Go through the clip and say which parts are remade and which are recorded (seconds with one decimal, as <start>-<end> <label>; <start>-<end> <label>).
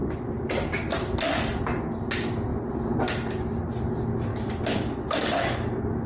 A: 0.0-1.6 remade; 1.6-4.3 recorded; 4.3-6.1 remade